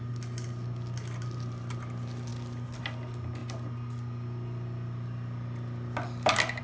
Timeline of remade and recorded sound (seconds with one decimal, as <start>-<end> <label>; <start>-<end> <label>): 0.0-6.6 recorded